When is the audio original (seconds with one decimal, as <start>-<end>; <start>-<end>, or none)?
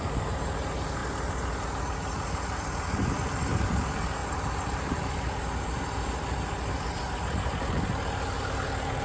0.0-9.0